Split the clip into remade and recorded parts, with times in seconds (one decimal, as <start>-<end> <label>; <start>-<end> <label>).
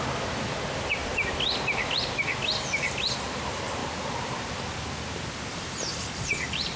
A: 0.0-3.8 recorded; 3.8-4.4 remade; 4.4-5.5 recorded; 5.5-6.8 remade